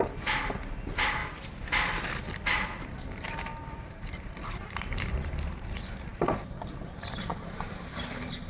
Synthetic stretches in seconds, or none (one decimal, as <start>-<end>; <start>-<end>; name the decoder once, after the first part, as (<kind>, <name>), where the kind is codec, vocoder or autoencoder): 0.0-1.2 (vocoder, BigVGAN v2); 3.0-8.5